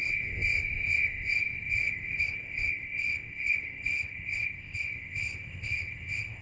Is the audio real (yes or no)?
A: no